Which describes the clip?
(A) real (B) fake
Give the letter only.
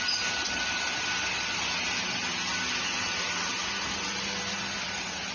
A